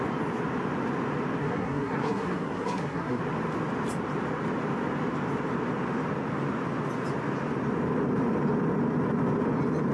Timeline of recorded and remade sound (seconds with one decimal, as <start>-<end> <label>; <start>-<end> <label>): 0.0-1.4 recorded; 1.4-3.2 remade; 3.2-9.9 recorded